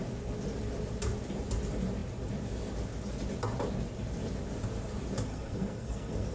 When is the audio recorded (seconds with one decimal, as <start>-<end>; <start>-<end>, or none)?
0.0-5.3